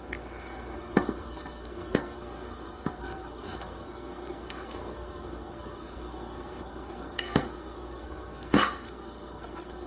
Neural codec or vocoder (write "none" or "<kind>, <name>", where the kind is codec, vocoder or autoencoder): codec, SNAC